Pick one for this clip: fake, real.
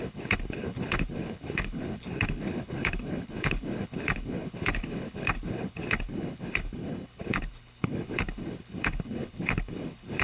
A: fake